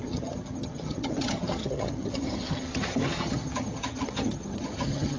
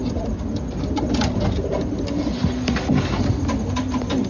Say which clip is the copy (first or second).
first